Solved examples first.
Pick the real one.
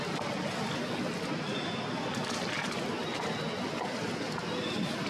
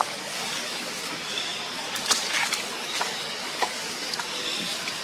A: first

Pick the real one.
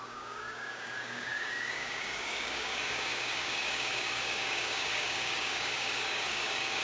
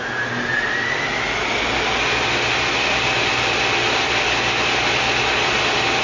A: second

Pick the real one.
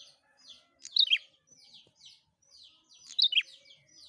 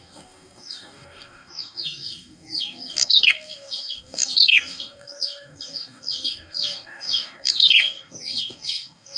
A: first